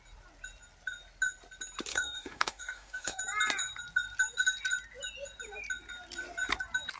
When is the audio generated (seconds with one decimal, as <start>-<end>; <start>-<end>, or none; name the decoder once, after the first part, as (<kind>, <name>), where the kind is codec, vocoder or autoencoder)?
1.9-3.2 (autoencoder, DAC-VAE)